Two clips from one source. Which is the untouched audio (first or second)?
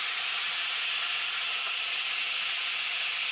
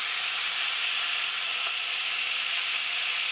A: second